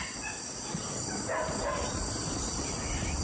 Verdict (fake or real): real